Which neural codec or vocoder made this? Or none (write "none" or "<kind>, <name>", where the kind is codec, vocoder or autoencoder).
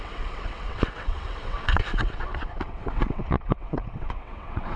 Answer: vocoder, WaveNeXt